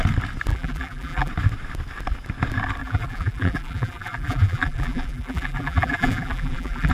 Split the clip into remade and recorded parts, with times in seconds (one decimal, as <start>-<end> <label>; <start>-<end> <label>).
0.0-0.5 recorded; 0.5-1.3 remade; 1.3-2.8 recorded; 2.8-6.9 remade

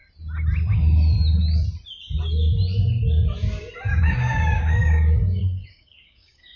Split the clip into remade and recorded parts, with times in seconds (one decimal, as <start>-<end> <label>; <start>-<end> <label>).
0.0-4.0 recorded; 4.0-6.6 remade

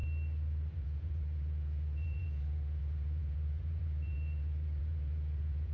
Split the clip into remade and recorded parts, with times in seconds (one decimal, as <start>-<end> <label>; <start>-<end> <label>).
0.0-0.7 recorded; 0.7-5.7 remade

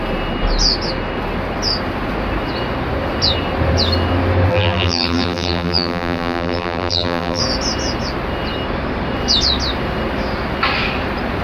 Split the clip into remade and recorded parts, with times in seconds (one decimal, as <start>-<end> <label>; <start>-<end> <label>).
0.0-4.5 recorded; 4.5-7.4 remade; 7.4-11.4 recorded

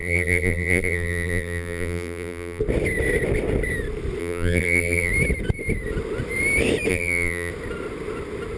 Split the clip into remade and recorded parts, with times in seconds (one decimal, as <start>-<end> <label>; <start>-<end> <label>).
0.0-2.6 remade; 2.6-4.2 recorded; 4.2-5.1 remade; 5.1-6.9 recorded; 6.9-7.5 remade; 7.5-8.6 recorded

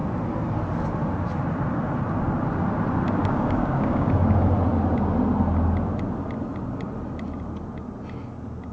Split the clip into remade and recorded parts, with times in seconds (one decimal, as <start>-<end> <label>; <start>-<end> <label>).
0.0-3.2 recorded; 3.2-4.1 remade; 4.1-8.7 recorded

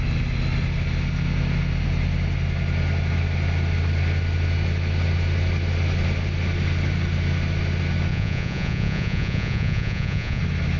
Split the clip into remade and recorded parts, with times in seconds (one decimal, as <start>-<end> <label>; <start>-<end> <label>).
0.0-8.1 recorded; 8.1-10.4 remade; 10.4-10.8 recorded

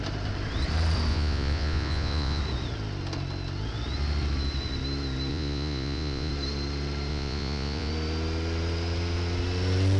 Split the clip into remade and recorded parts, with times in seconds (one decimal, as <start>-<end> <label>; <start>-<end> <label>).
0.0-1.1 recorded; 1.1-2.4 remade; 2.4-5.3 recorded; 5.3-6.3 remade; 6.3-7.1 recorded; 7.1-7.9 remade; 7.9-10.0 recorded